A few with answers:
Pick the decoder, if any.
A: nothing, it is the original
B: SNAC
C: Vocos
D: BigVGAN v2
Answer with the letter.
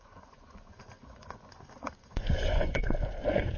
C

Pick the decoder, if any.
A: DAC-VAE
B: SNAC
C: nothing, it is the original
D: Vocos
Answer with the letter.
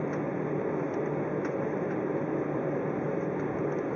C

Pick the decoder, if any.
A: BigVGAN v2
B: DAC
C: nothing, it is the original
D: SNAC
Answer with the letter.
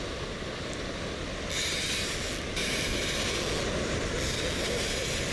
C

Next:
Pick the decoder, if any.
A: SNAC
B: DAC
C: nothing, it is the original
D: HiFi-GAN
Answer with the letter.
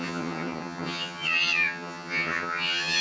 D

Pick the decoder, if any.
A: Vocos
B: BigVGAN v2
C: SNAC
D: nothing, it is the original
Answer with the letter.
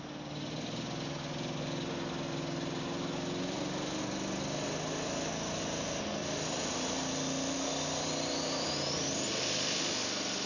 D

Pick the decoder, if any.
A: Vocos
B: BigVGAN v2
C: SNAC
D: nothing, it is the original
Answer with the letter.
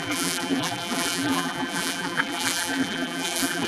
B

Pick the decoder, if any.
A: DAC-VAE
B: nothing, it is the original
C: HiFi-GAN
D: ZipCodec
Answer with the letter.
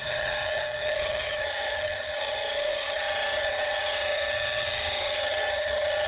C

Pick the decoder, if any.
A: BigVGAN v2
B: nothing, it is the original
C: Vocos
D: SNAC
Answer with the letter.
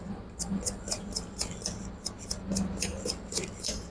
B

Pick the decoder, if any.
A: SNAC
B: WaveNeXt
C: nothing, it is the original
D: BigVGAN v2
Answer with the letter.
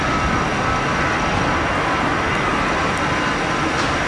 C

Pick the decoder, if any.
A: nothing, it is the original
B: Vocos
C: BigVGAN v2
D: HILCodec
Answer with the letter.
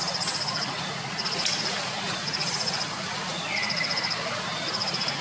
B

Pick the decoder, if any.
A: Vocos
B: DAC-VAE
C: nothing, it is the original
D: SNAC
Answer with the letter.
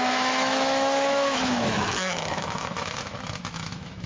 B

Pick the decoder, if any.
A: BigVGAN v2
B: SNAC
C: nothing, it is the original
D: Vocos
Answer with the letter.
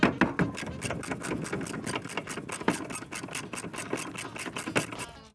C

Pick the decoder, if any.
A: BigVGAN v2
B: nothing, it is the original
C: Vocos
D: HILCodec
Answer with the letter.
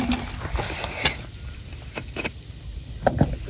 B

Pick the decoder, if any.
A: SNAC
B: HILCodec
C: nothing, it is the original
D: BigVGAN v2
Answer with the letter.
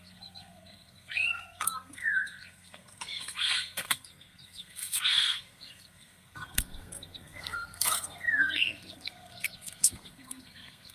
A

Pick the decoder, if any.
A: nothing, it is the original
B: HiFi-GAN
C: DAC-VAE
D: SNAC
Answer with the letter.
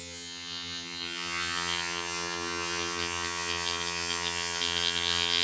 B